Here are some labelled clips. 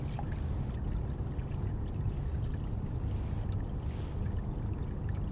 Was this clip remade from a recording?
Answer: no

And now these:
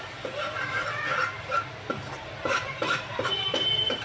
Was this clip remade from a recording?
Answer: yes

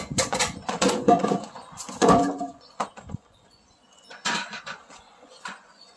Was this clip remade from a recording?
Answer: yes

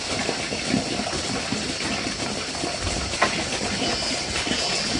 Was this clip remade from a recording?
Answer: no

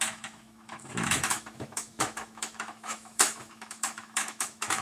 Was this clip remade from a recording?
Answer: yes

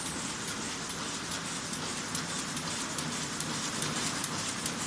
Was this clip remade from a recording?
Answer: no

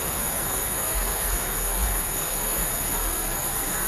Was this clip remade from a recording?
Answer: yes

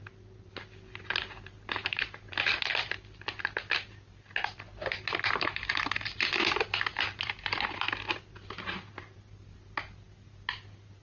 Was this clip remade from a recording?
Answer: no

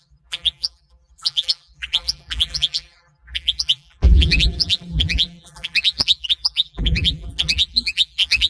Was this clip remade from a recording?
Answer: yes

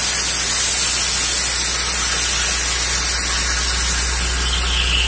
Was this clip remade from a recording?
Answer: no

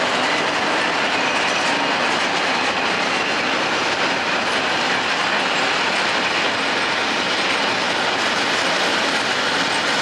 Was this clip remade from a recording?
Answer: no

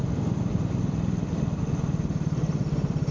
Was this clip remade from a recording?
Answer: no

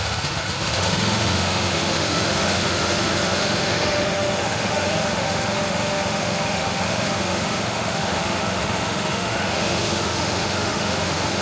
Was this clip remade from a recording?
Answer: yes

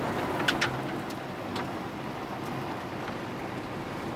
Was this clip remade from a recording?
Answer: no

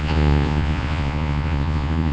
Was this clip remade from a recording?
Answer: yes